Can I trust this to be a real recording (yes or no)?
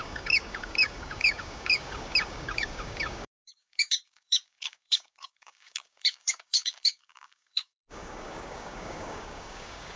no